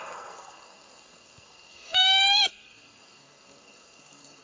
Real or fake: fake